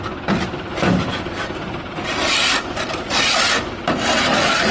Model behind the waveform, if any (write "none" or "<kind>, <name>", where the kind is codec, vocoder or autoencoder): none